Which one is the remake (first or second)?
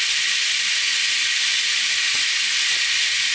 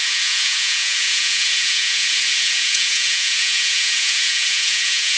second